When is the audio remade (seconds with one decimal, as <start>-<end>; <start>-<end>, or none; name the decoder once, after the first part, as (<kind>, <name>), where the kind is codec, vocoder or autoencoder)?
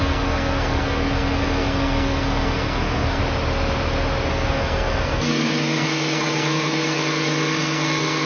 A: 0.0-3.2 (codec, SNAC); 4.3-8.3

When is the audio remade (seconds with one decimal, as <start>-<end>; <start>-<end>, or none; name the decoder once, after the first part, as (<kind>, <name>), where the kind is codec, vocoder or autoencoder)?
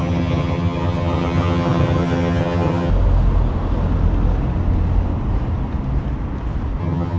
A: 0.0-2.9 (vocoder, HiFi-GAN); 6.8-7.2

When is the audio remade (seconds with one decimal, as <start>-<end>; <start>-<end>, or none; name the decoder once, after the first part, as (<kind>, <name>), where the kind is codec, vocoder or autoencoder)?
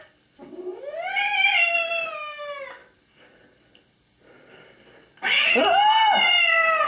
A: none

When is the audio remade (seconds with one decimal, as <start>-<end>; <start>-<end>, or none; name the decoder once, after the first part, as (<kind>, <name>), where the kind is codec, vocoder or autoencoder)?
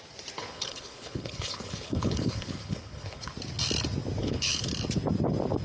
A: 0.4-3.3 (codec, HILCodec); 4.2-4.7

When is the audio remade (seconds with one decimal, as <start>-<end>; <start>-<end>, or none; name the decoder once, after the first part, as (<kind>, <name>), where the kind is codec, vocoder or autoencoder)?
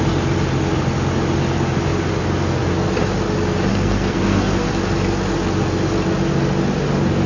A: 3.7-4.7 (codec, SNAC)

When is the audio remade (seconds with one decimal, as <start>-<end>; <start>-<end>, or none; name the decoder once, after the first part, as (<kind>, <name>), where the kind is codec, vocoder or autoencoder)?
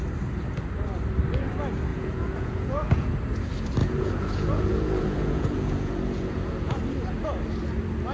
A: 1.9-3.1 (vocoder, Vocos); 3.8-6.8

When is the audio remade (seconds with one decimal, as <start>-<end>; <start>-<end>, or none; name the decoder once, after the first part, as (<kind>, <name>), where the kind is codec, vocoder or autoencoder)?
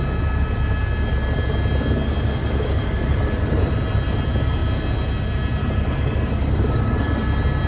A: 2.4-3.6 (codec, DAC); 5.6-7.2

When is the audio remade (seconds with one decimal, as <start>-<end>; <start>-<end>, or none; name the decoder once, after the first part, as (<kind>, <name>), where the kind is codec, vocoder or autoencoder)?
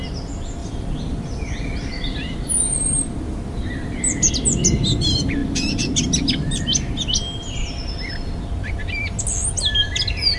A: 0.6-4.3 (vocoder, BigVGAN v2)